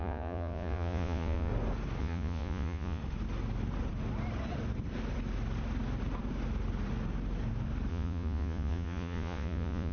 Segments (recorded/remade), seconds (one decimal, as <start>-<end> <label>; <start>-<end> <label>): 0.0-1.5 remade; 1.5-2.0 recorded; 2.0-3.0 remade; 3.0-7.9 recorded; 7.9-9.9 remade